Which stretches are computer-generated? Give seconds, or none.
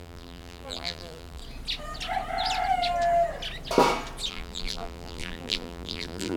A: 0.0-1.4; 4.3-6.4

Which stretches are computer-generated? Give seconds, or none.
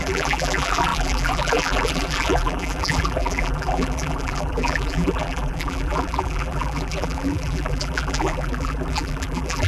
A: 0.0-9.7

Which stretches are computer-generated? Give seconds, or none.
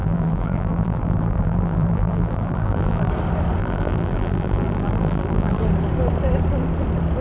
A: 0.0-3.1; 3.6-5.6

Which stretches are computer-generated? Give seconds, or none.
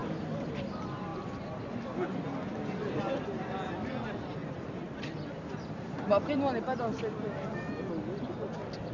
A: 0.0-0.7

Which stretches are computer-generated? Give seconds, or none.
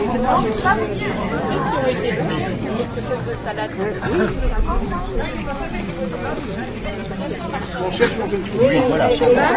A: 0.0-3.4; 4.3-5.6; 6.6-9.6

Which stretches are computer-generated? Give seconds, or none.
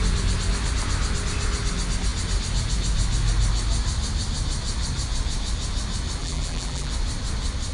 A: 6.2-6.9